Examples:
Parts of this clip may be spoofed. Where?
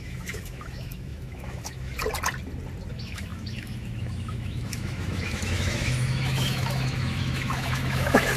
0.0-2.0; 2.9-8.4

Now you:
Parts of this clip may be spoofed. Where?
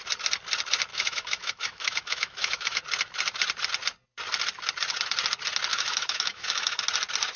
0.9-2.8; 5.7-6.8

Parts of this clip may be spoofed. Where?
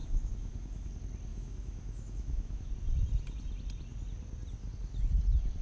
0.0-0.9; 1.3-2.7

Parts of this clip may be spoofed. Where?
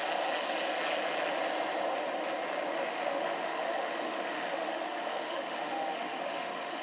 2.7-6.8